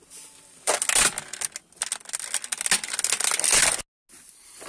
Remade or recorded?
recorded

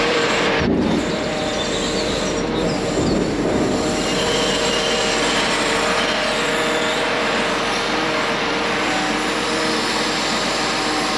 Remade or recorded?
remade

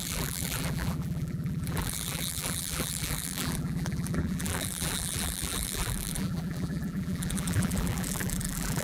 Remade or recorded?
remade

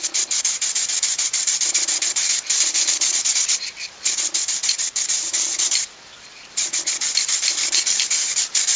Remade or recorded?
remade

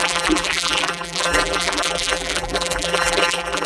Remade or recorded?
remade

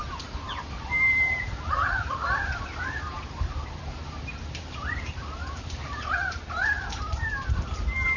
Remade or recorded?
remade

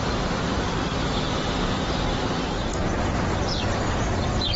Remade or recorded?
remade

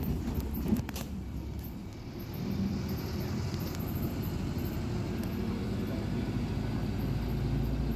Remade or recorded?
remade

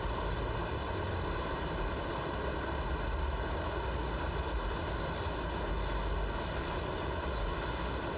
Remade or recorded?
recorded